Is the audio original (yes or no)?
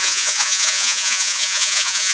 no